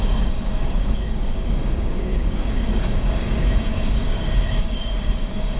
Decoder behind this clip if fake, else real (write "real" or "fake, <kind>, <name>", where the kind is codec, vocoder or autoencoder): fake, codec, DAC